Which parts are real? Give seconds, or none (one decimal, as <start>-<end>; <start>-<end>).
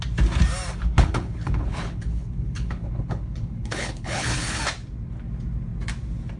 0.0-0.8; 4.6-6.4